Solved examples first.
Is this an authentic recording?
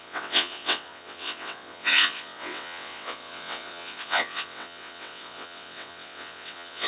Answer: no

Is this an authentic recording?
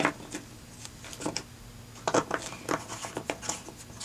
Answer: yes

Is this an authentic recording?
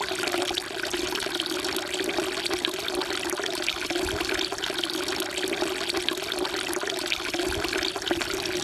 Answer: yes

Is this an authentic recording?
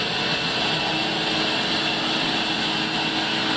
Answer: yes